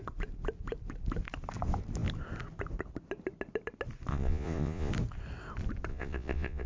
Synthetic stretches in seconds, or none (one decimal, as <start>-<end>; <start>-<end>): 4.1-4.9; 5.9-6.7